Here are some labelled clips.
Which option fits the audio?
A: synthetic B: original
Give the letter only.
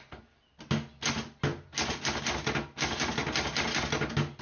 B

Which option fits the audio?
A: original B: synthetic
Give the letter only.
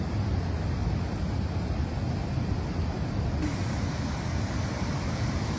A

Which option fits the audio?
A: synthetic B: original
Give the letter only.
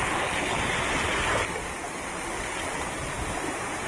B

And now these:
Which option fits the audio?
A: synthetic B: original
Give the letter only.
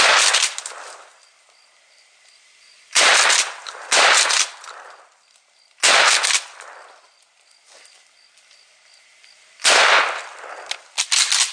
B